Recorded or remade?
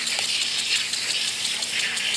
recorded